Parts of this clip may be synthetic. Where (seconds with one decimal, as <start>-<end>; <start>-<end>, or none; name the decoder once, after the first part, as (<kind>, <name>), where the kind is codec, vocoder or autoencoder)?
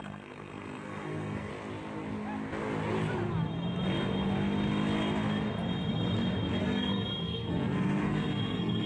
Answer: 0.0-1.5 (codec, SNAC); 6.6-8.9